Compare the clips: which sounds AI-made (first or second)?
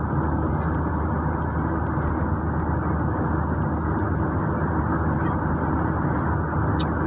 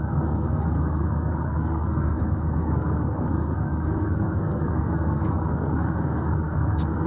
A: second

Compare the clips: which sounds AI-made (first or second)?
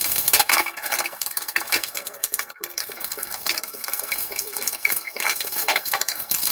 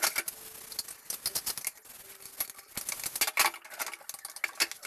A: first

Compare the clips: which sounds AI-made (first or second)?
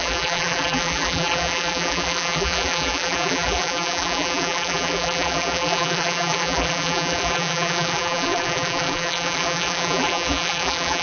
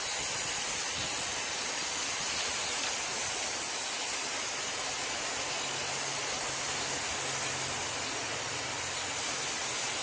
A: first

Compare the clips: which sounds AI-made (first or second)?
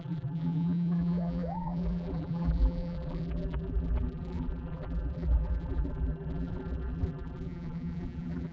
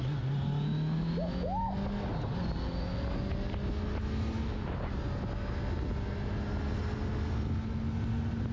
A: first